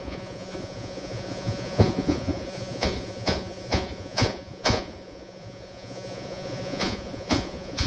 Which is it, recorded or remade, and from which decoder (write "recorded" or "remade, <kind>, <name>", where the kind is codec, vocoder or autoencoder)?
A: remade, vocoder, Vocos